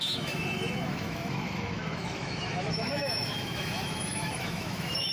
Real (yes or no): no